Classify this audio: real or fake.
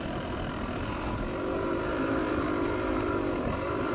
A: real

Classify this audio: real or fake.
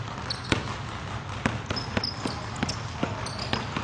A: real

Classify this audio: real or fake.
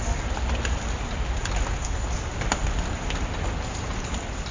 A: real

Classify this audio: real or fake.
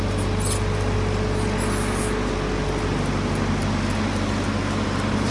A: real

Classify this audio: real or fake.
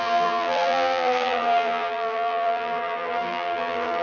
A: fake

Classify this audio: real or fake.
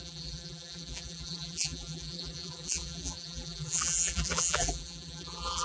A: fake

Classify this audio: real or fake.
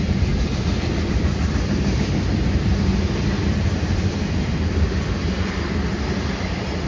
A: fake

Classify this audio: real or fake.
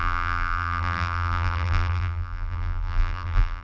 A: fake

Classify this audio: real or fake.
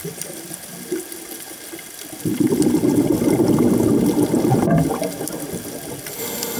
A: real